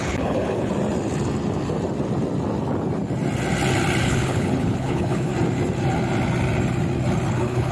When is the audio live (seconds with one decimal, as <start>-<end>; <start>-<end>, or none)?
0.7-4.0; 5.3-7.3